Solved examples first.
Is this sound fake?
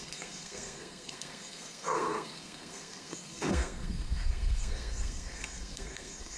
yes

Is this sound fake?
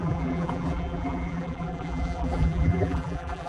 yes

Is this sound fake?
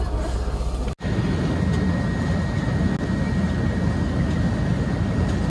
no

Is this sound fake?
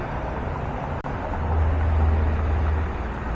no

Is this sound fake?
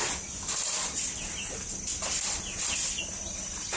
no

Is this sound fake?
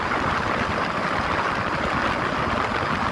no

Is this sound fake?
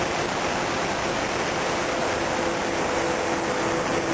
no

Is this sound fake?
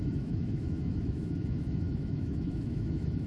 yes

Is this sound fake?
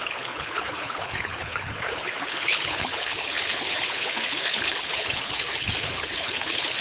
yes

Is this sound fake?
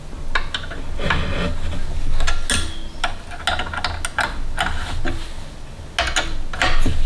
no